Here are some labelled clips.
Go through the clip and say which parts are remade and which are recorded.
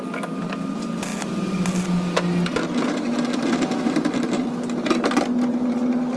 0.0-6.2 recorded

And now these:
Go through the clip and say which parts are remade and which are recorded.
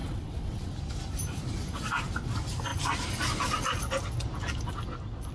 0.0-0.7 remade; 0.7-5.3 recorded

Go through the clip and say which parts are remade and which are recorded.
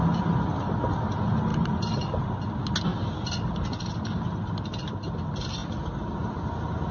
0.0-6.9 recorded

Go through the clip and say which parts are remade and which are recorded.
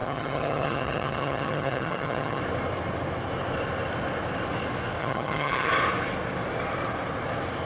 0.0-2.4 remade; 2.4-5.0 recorded; 5.0-5.7 remade; 5.7-7.7 recorded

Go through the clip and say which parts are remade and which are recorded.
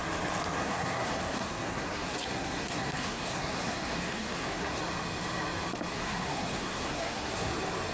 0.0-0.6 recorded; 0.6-4.8 remade; 4.8-5.9 recorded; 5.9-7.5 remade; 7.5-7.9 recorded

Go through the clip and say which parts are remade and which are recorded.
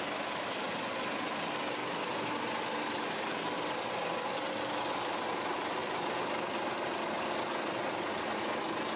0.0-9.0 recorded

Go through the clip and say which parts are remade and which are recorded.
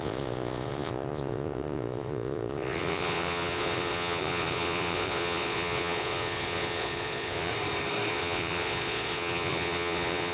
0.0-7.5 remade; 7.5-8.1 recorded; 8.1-10.3 remade